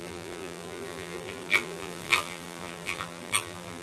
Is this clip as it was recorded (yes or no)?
no